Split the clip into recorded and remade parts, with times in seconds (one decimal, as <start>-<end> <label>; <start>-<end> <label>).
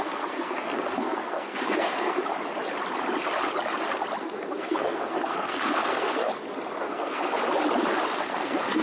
0.0-2.2 remade; 2.2-4.2 recorded; 4.2-6.3 remade; 6.3-6.8 recorded; 6.8-7.4 remade; 7.4-8.2 recorded; 8.2-8.8 remade